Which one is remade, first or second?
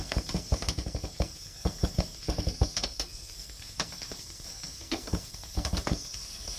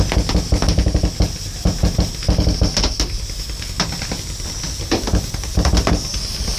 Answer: first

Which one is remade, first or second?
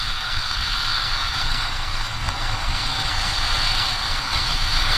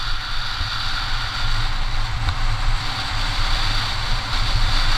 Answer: first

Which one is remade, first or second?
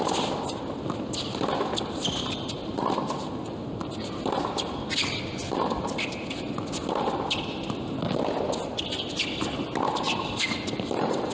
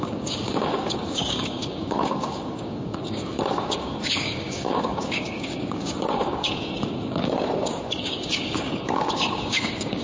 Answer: second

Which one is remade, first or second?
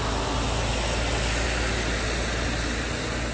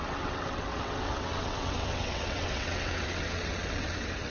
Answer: second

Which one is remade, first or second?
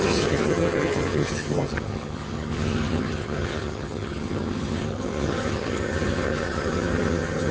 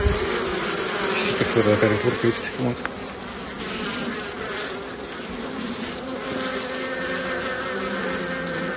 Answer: first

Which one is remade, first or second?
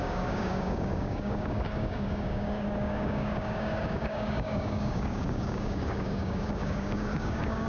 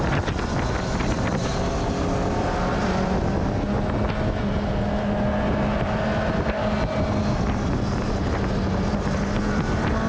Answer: first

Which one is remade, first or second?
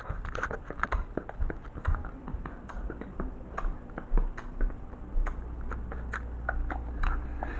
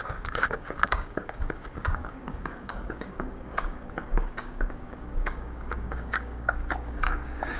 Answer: second